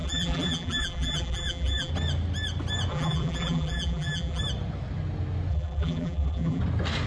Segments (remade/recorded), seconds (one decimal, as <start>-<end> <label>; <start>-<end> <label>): 0.0-1.9 remade; 1.9-2.9 recorded; 2.9-4.4 remade; 4.4-5.5 recorded; 5.5-6.6 remade; 6.6-7.1 recorded